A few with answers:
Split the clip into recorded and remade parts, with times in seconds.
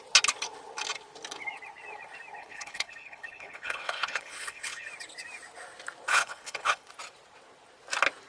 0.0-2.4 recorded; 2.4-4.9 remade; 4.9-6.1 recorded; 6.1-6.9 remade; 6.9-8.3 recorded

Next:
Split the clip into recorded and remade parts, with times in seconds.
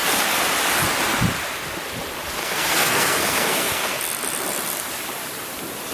0.0-2.4 recorded; 2.4-4.0 remade; 4.0-5.9 recorded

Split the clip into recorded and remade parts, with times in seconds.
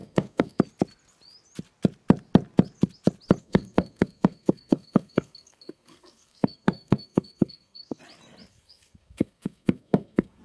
0.0-0.6 remade; 0.6-3.4 recorded; 3.4-8.0 remade; 8.0-8.5 recorded; 8.5-10.4 remade